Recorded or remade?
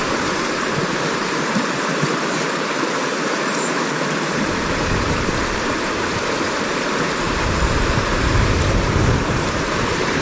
remade